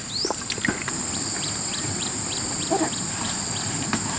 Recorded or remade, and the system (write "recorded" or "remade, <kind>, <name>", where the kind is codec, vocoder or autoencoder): recorded